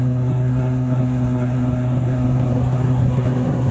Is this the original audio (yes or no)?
no